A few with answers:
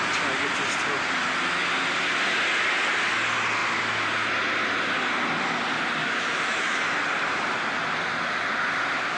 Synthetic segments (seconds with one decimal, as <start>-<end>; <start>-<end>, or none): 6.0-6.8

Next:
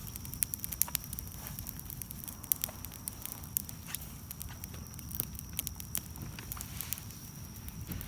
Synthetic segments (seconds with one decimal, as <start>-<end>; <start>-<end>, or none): 4.5-5.6; 6.9-8.1

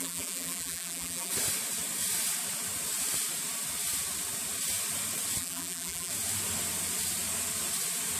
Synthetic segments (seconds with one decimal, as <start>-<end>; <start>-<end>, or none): 0.0-1.3; 5.4-6.1